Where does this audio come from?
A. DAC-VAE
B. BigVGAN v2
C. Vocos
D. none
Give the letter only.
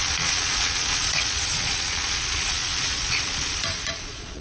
C